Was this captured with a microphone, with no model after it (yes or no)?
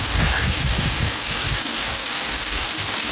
no